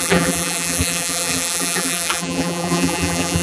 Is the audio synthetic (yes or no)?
yes